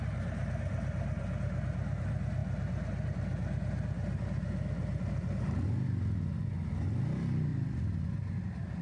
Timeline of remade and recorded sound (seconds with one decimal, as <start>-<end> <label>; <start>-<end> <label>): 0.0-7.5 recorded; 7.5-8.1 remade; 8.1-8.8 recorded